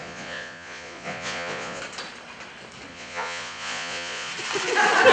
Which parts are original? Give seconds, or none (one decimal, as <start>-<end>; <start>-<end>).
1.8-2.9; 4.3-5.1